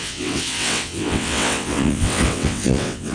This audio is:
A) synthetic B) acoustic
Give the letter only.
A